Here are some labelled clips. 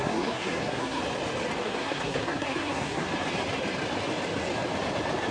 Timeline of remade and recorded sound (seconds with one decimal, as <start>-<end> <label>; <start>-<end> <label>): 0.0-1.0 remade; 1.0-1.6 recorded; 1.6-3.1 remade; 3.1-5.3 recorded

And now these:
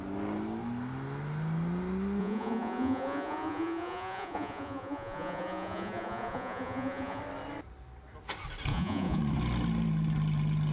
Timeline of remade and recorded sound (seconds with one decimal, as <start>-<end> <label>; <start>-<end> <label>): 0.0-2.2 recorded; 2.2-7.2 remade; 7.2-8.7 recorded; 8.7-9.2 remade; 9.2-10.7 recorded

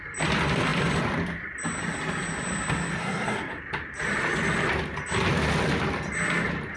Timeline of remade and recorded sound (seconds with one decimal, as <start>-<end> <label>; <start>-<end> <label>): 0.0-3.0 recorded; 3.0-3.6 remade; 3.6-6.8 recorded

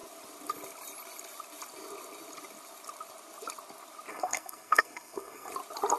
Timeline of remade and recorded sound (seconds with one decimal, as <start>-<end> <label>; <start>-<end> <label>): 0.0-4.1 recorded; 4.1-5.5 remade; 5.5-6.0 recorded

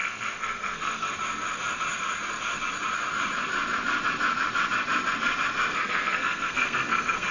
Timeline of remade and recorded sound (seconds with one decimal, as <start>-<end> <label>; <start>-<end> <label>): 0.0-1.1 remade; 1.1-5.7 recorded; 5.7-7.3 remade

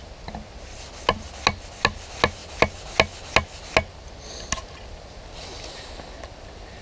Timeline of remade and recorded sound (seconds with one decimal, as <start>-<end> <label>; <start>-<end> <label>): 0.0-6.8 recorded